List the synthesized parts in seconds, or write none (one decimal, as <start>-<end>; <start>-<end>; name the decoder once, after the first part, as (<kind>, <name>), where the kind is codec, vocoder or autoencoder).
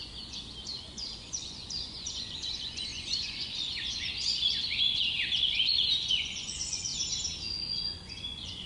0.0-6.9 (vocoder, Vocos); 7.5-8.7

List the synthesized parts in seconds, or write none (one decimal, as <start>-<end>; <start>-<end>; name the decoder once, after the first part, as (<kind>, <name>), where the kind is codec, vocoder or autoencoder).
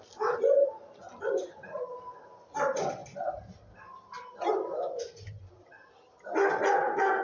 none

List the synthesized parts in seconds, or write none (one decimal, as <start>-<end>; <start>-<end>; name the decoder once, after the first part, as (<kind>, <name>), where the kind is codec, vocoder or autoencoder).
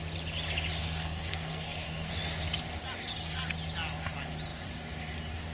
0.8-2.1 (codec, SNAC)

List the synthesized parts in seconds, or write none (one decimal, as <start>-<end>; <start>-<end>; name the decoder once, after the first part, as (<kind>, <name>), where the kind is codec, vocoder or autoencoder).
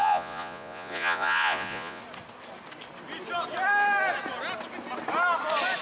0.0-2.0 (vocoder, Vocos)